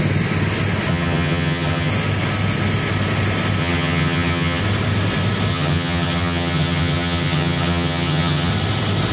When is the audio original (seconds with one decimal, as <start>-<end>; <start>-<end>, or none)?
0.0-0.9; 1.9-3.6; 4.6-5.5; 8.5-9.1